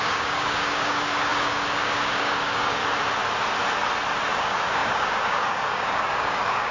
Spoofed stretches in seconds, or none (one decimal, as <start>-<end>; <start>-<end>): 0.0-2.8; 4.3-6.7

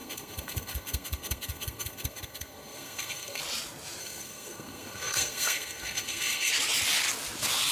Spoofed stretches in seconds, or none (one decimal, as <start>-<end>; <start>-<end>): 0.0-3.4; 4.0-6.5

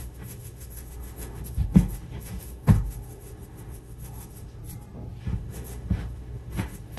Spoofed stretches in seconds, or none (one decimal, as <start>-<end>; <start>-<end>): 0.0-4.6; 5.2-7.0

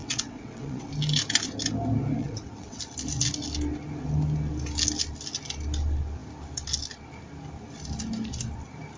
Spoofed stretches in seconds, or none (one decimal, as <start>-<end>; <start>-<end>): 0.0-0.9; 2.2-2.8

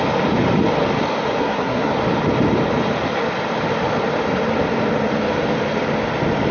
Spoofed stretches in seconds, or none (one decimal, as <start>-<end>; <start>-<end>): 1.4-1.9